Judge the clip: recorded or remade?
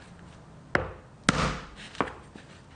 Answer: recorded